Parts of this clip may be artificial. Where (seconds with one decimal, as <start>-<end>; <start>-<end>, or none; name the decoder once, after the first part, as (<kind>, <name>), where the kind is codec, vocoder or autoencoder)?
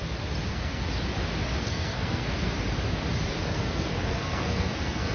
0.5-0.9 (codec, SNAC); 1.6-2.5; 3.4-5.1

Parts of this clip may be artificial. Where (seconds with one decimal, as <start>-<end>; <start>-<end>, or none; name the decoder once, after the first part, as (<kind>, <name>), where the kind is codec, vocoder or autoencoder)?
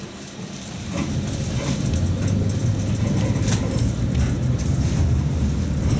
none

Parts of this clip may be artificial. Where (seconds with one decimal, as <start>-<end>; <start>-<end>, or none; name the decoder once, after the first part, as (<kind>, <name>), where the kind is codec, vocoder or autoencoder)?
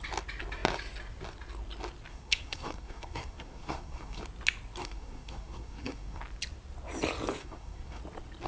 2.1-4.2 (codec, SNAC); 4.8-6.2; 7.4-8.0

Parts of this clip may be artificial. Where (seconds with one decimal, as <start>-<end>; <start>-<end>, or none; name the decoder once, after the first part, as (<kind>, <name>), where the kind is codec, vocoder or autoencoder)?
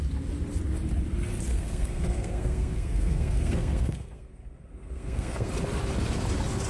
1.5-5.5 (codec, SNAC)